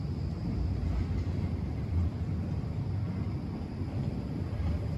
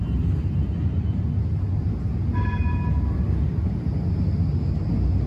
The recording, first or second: second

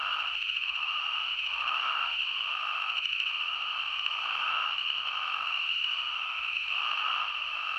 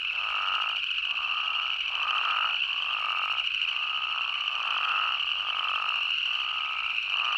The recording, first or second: second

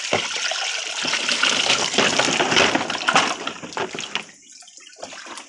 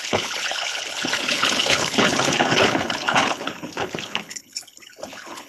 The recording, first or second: first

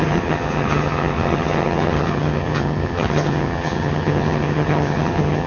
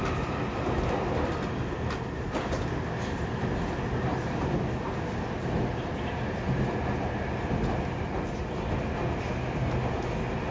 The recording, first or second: second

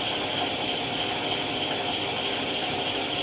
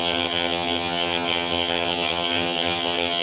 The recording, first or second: first